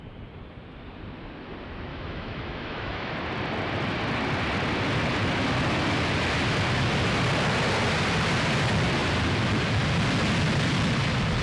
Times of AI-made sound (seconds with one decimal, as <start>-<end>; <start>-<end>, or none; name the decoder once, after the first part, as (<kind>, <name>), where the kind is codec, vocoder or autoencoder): 1.9-3.1 (autoencoder, DAC-VAE)